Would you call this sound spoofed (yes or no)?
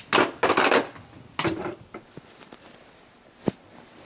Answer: no